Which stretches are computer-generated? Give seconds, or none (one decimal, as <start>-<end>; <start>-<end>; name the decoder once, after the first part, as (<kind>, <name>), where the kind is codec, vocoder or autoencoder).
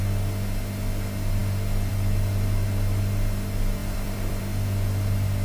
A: 3.8-4.4 (vocoder, BigVGAN v2)